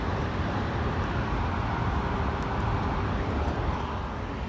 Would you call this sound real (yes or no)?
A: yes